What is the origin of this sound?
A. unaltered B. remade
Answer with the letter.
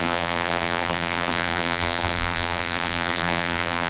B